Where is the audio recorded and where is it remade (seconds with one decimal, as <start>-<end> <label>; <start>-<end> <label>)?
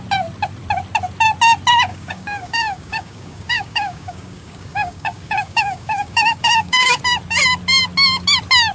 0.0-1.9 recorded; 1.9-7.0 remade; 7.0-8.7 recorded